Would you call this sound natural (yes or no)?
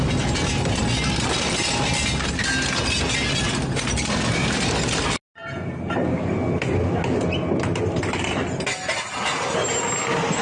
yes